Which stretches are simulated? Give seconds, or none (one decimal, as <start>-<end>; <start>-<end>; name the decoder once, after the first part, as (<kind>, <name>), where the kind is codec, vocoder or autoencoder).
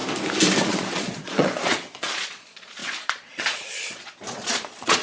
0.6-5.0 (vocoder, Vocos)